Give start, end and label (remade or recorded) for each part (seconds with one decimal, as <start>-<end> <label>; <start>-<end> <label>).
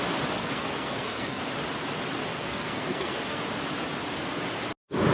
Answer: 0.0-0.4 recorded; 0.4-1.4 remade; 1.4-2.3 recorded; 2.3-3.4 remade; 3.4-5.1 recorded